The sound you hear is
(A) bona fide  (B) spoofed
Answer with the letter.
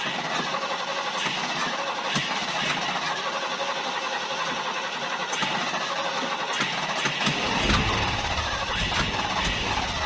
A